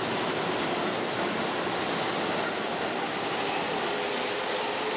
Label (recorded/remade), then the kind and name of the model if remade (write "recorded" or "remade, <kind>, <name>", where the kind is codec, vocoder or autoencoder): recorded